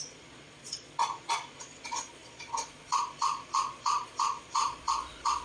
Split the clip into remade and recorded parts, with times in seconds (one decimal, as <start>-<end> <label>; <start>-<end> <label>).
0.0-5.4 remade